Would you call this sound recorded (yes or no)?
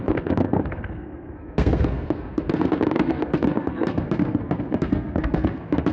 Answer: no